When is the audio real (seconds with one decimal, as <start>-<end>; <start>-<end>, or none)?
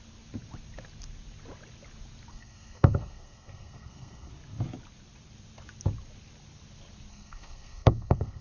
0.0-2.3; 4.3-7.1